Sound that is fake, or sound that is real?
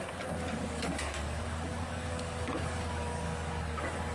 fake